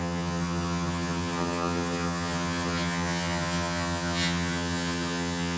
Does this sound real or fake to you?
fake